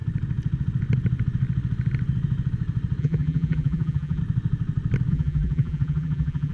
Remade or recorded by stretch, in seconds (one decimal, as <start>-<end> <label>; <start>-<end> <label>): 0.0-3.0 recorded; 3.0-4.2 remade; 4.2-5.1 recorded; 5.1-6.5 remade